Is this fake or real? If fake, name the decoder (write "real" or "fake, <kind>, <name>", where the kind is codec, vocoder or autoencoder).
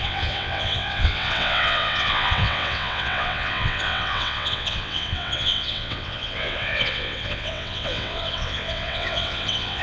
fake, vocoder, WaveNeXt